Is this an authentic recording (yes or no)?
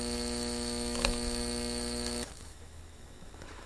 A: no